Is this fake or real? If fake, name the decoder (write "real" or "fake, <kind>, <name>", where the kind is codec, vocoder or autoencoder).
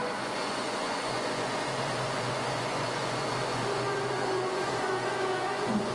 fake, vocoder, Vocos